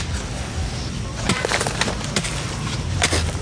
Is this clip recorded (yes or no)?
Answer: yes